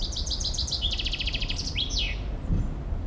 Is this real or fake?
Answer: real